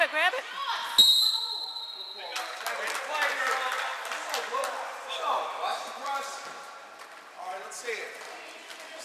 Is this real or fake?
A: real